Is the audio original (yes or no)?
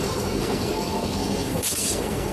no